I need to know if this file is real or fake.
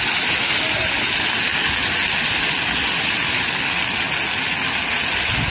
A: real